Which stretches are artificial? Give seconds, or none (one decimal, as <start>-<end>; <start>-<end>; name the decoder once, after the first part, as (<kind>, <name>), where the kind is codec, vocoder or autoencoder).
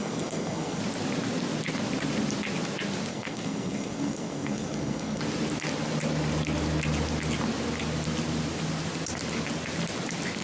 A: 0.0-0.8 (codec, SNAC); 3.1-5.2